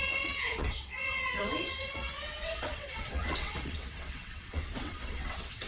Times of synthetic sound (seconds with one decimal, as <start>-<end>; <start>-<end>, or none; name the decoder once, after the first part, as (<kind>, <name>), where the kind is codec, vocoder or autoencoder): 0.0-5.7 (vocoder, WaveNeXt)